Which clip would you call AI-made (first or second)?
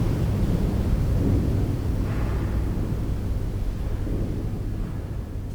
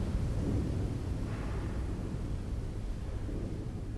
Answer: second